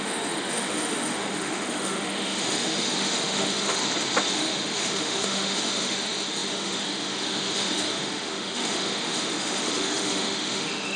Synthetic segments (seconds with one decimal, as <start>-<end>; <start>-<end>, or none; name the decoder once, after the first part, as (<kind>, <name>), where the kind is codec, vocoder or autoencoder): 0.0-3.8 (autoencoder, DAC-VAE); 4.3-11.0